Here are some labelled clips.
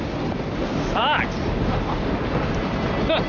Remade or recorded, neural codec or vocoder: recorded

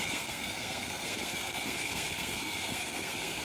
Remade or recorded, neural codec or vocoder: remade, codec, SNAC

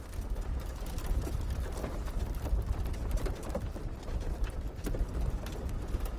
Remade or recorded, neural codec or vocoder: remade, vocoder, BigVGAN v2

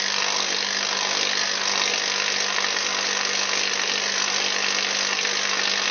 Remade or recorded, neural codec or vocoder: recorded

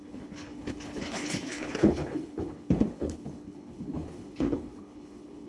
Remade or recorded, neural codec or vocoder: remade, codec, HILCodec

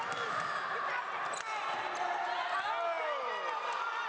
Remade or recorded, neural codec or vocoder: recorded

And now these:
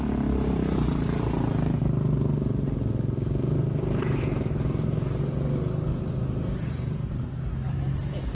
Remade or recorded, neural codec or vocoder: recorded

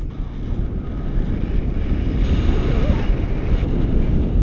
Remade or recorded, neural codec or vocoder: recorded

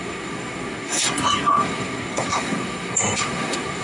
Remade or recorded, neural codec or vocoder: remade, codec, SNAC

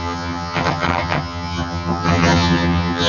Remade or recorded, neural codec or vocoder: remade, vocoder, HiFi-GAN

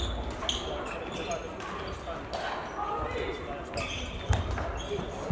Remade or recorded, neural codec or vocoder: recorded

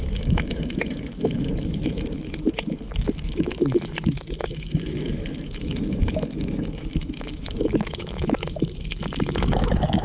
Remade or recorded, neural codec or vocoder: remade, autoencoder, DAC-VAE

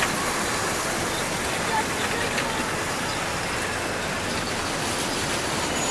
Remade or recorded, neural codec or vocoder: recorded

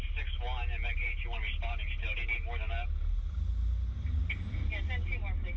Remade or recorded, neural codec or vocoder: recorded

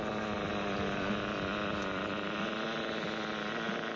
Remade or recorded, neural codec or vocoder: recorded